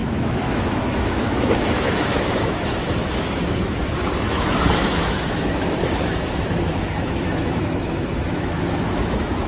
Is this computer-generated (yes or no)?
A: yes